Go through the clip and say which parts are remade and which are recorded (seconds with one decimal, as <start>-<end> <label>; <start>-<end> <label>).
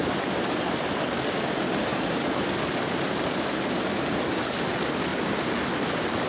0.0-5.1 remade; 5.1-5.7 recorded; 5.7-6.3 remade